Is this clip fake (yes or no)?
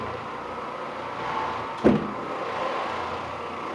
no